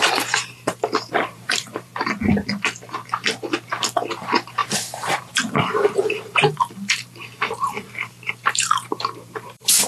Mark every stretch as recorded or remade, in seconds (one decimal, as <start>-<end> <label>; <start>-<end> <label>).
0.0-1.9 remade; 1.9-4.1 recorded; 4.1-9.9 remade